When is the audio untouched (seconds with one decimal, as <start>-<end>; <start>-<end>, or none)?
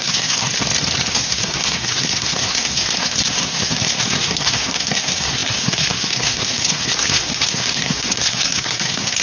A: 0.5-1.1